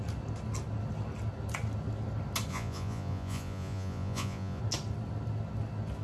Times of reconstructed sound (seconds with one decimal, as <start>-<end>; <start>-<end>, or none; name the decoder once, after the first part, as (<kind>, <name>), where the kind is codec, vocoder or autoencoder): 2.5-4.6 (vocoder, Vocos)